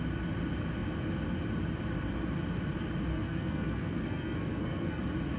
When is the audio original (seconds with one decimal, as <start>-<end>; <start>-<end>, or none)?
0.0-3.1; 5.0-5.4